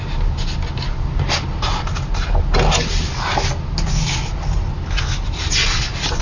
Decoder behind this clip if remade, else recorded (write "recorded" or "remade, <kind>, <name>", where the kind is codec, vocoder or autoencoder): recorded